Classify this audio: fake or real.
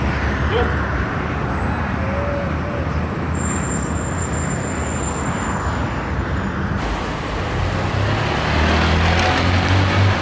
real